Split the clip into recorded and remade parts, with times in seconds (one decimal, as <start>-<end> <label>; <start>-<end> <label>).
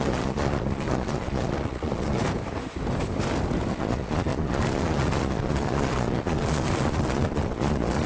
0.0-2.2 remade; 2.2-3.7 recorded; 3.7-8.1 remade